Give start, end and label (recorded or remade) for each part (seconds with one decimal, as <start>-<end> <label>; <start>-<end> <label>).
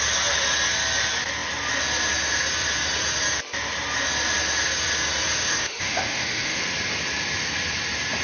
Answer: 0.0-5.4 recorded; 5.4-6.6 remade; 6.6-8.2 recorded